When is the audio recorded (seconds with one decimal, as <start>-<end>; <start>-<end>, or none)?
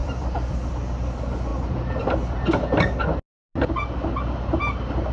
0.7-5.1